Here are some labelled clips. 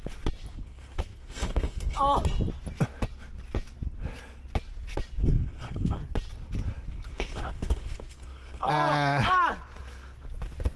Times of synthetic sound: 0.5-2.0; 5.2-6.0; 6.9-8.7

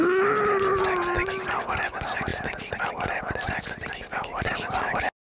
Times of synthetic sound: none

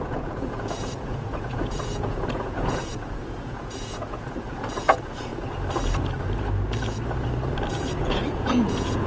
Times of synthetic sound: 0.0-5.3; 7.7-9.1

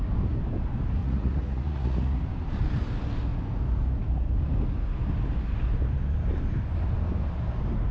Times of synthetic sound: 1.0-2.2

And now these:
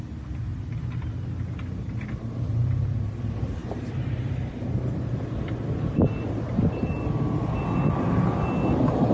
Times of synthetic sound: 0.5-1.3; 3.6-4.5

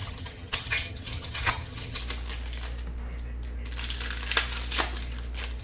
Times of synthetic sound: 0.0-2.0